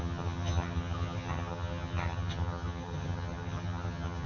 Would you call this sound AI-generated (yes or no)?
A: yes